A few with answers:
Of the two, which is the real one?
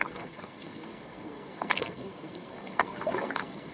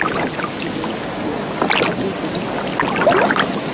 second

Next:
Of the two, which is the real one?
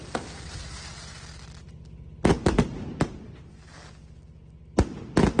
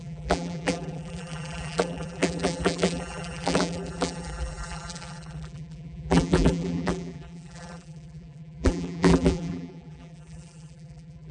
first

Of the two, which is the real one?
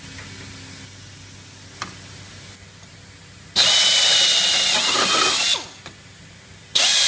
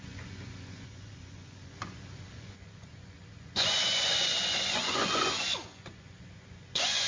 first